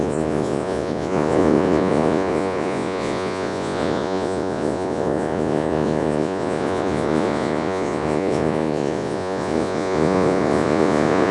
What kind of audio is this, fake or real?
fake